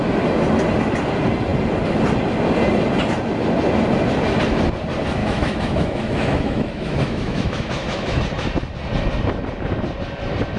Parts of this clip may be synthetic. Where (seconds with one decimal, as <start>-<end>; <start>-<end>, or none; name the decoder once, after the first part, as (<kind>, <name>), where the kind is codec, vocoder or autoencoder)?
5.2-8.2 (autoencoder, DAC-VAE)